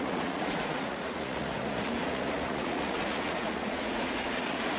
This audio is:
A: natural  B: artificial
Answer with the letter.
B